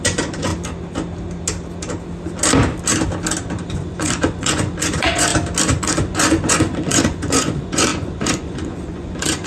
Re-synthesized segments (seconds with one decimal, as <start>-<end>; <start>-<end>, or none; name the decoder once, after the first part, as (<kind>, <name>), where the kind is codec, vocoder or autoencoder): 0.0-0.5 (vocoder, Vocos); 3.6-5.3; 5.8-9.5